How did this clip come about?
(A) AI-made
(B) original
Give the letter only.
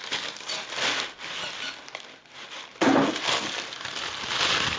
B